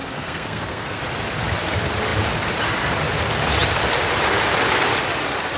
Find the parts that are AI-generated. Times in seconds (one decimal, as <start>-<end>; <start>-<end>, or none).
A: 0.0-1.0